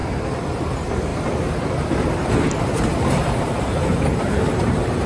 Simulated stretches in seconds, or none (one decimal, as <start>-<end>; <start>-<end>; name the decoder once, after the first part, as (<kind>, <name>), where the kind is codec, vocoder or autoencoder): 0.6-5.1 (vocoder, BigVGAN v2)